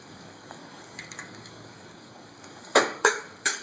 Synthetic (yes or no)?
yes